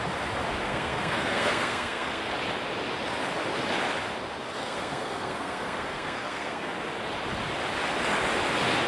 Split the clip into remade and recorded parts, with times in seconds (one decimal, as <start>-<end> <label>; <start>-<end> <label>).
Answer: 0.0-0.6 recorded; 0.6-2.3 remade; 2.3-4.6 recorded; 4.6-6.7 remade; 6.7-8.9 recorded